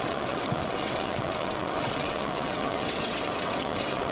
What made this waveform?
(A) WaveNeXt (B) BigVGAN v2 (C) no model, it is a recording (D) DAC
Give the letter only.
A